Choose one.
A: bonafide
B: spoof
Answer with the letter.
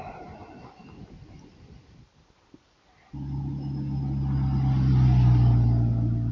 A